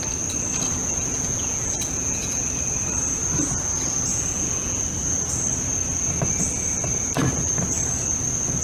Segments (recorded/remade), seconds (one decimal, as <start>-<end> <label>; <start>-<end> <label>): 0.0-0.8 recorded; 0.8-2.4 remade; 2.4-4.1 recorded; 4.1-4.8 remade; 4.8-8.6 recorded